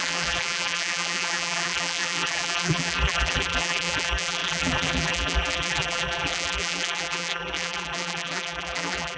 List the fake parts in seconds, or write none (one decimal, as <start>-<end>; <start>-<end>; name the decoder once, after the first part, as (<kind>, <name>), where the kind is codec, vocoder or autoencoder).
0.0-9.2 (vocoder, BigVGAN v2)